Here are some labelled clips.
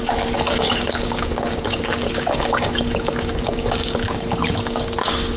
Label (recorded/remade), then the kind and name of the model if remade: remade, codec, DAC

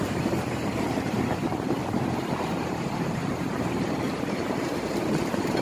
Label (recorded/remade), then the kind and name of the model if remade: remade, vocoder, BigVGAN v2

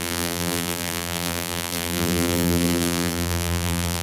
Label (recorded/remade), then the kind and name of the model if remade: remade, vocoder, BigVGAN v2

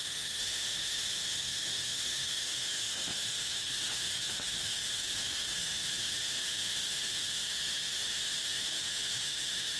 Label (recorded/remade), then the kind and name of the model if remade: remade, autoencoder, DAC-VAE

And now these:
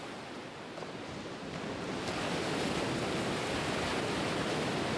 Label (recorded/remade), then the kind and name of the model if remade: recorded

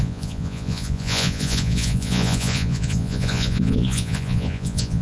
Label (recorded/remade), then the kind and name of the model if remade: remade, vocoder, Vocos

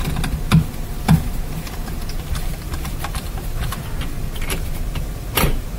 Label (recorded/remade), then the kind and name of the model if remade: recorded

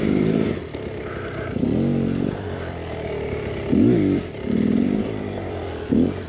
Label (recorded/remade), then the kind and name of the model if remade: recorded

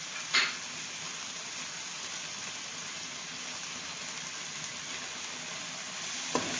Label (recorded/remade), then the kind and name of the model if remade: recorded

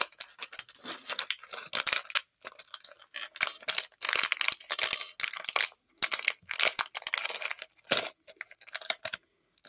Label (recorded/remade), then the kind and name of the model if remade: recorded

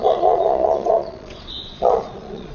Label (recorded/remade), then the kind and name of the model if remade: remade, vocoder, Vocos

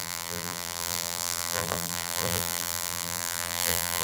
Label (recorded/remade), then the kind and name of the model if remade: remade, vocoder, BigVGAN v2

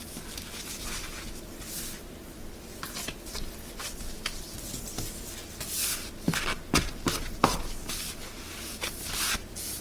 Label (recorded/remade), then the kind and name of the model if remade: recorded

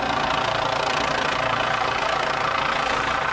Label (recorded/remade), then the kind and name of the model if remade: recorded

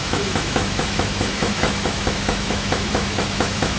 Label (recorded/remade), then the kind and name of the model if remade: remade, autoencoder, DAC-VAE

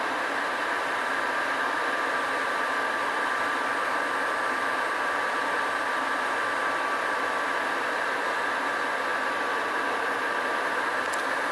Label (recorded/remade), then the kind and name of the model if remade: recorded